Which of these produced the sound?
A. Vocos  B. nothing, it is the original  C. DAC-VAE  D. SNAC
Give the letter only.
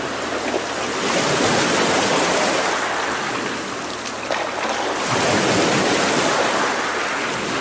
B